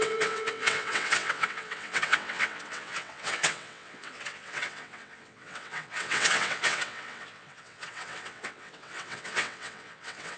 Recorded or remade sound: remade